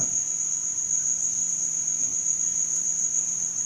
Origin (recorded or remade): remade